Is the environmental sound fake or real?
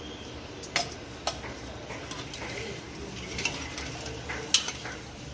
real